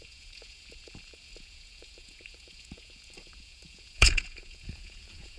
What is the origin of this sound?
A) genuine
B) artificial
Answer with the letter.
B